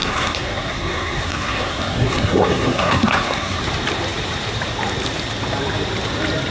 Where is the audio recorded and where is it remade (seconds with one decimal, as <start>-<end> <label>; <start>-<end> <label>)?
0.0-3.6 remade; 3.6-6.5 recorded